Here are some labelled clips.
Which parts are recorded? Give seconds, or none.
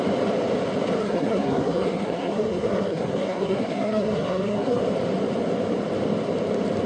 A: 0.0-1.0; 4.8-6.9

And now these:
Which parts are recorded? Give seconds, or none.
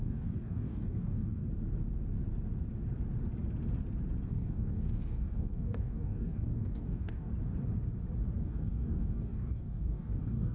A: 1.4-4.3; 7.3-8.4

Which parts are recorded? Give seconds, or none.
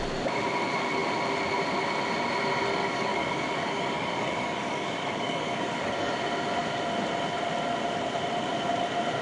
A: 0.0-2.8; 6.1-9.2